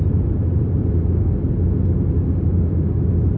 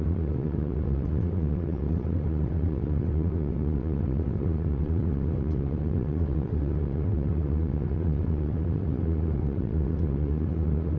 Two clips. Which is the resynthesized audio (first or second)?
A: second